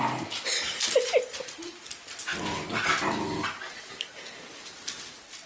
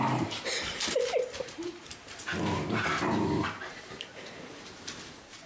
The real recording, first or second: first